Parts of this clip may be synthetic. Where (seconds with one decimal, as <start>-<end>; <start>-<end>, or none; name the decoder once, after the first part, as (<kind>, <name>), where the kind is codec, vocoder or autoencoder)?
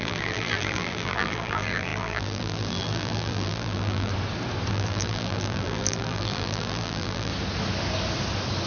0.0-4.1 (vocoder, BigVGAN v2); 4.7-7.3